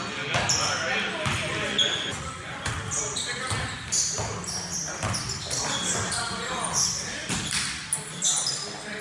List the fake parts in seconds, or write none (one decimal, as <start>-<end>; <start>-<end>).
1.7-2.7